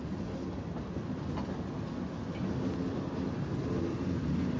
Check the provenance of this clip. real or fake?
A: real